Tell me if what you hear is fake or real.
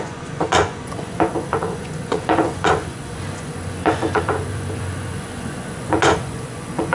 fake